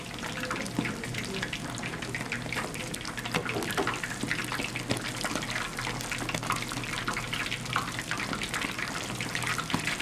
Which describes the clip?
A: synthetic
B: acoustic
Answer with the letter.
B